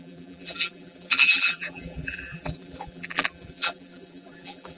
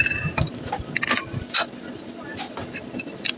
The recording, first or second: second